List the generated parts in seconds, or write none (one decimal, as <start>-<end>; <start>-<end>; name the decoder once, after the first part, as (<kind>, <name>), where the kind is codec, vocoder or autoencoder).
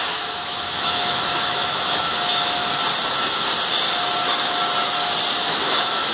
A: 0.0-2.6 (autoencoder, DAC-VAE); 5.4-6.1